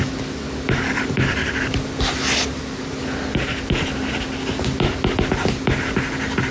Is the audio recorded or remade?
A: recorded